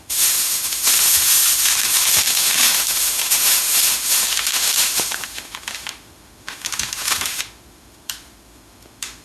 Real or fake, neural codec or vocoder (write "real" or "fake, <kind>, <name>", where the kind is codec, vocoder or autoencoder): fake, autoencoder, DAC-VAE